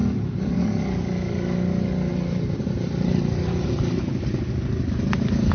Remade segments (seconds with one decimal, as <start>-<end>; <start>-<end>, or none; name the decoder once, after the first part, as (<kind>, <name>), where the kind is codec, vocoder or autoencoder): 0.0-0.6 (vocoder, BigVGAN v2); 2.1-4.0